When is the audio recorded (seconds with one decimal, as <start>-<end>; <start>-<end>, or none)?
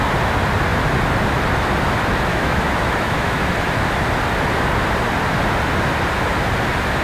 0.0-2.3; 3.5-7.0